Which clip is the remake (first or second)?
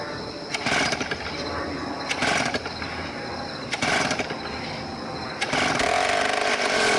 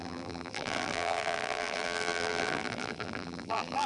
second